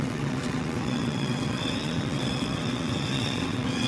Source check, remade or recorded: remade